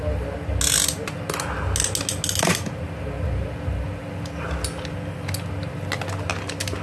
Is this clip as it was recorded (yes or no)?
yes